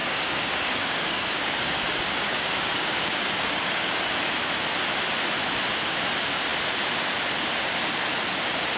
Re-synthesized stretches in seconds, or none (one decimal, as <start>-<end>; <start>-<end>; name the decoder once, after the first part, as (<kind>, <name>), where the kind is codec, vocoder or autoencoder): 0.0-4.1 (codec, DAC)